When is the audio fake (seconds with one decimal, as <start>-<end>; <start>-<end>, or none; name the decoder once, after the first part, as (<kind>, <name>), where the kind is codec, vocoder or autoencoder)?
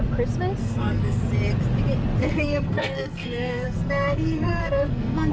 0.6-1.2 (codec, SNAC); 2.2-5.3